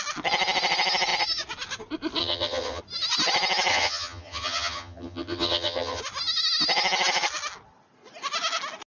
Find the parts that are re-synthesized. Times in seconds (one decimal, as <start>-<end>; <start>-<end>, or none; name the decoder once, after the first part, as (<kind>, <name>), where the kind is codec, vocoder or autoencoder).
2.2-2.8 (vocoder, HiFi-GAN); 3.7-6.0